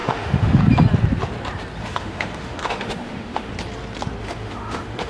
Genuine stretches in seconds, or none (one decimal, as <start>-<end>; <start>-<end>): 0.6-1.8; 3.5-4.2